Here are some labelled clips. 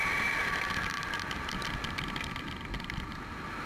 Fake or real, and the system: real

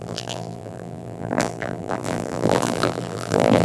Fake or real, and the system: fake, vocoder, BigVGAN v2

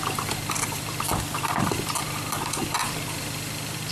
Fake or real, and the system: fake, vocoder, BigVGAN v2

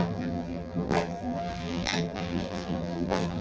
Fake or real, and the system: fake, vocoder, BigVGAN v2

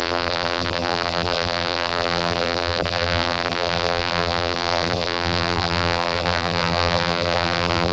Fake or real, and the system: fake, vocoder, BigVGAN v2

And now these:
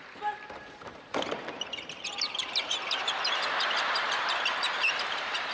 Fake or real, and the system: fake, vocoder, BigVGAN v2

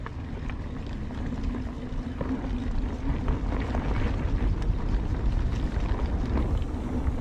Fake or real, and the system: real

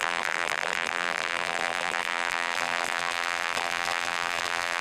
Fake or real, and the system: fake, vocoder, BigVGAN v2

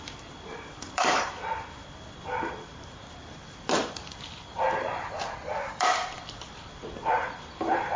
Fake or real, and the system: fake, vocoder, BigVGAN v2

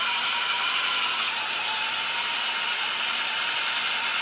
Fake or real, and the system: real